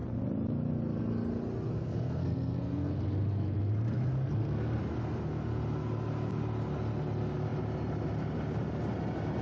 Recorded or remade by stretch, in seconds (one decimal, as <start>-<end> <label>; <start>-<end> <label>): 0.0-1.7 recorded; 1.7-4.8 remade; 4.8-9.4 recorded